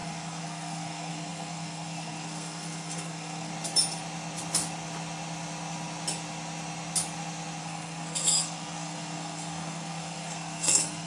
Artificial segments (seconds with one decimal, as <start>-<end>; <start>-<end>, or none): 0.0-3.5; 7.6-11.1